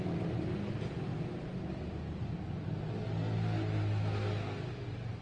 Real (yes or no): yes